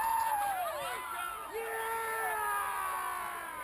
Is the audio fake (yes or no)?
no